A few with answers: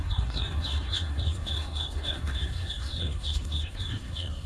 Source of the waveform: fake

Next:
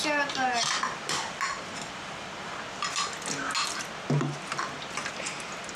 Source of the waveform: real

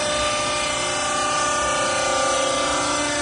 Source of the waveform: real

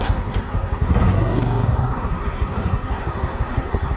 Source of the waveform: fake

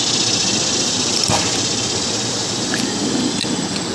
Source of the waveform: real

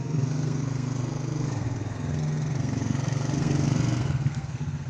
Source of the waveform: fake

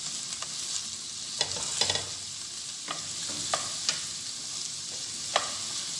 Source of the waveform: real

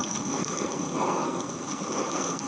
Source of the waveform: fake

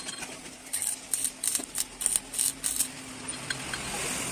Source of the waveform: real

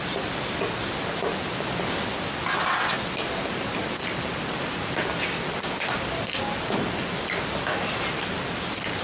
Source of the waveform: real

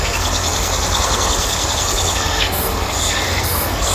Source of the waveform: fake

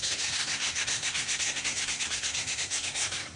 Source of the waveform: fake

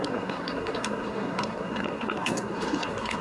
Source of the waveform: fake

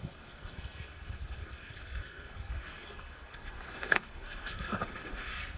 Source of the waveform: fake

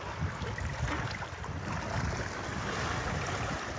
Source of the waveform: real